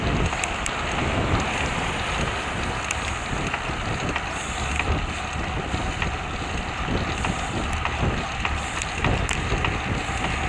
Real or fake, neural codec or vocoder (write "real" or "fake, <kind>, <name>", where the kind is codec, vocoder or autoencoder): real